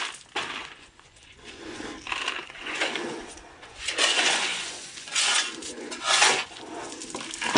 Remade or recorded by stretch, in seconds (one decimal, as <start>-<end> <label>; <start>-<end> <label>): 0.0-0.6 recorded; 0.6-1.8 remade; 1.8-2.4 recorded; 2.4-7.0 remade; 7.0-7.6 recorded